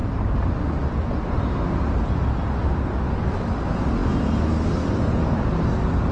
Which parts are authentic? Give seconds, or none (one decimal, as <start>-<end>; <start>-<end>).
0.0-6.1